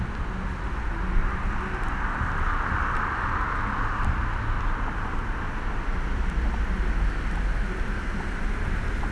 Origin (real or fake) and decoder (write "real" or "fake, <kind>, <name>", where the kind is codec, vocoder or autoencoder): real